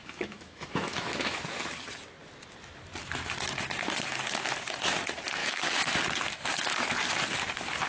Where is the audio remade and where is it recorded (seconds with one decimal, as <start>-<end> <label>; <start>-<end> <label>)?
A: 0.0-1.4 remade; 1.4-5.4 recorded; 5.4-6.0 remade; 6.0-7.9 recorded